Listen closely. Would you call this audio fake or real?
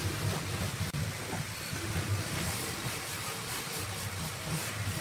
real